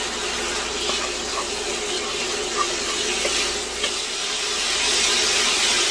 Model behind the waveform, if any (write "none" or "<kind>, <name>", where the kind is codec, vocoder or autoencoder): none